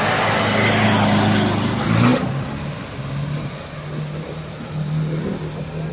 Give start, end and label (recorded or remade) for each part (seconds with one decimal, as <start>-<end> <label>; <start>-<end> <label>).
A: 0.0-5.9 recorded